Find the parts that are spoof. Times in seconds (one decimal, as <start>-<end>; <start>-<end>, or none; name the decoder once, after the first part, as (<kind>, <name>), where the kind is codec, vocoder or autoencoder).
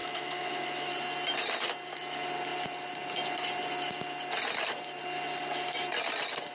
0.0-0.9 (autoencoder, DAC-VAE)